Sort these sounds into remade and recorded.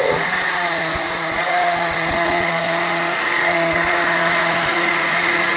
remade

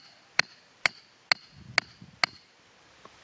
recorded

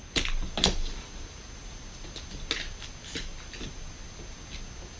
recorded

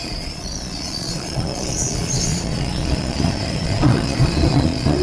remade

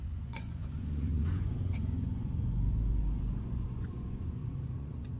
remade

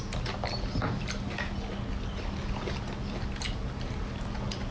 recorded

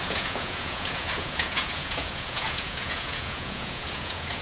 remade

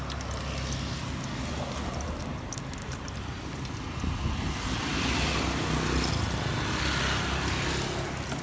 recorded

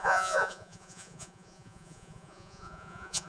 remade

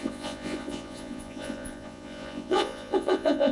remade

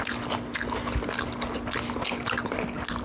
recorded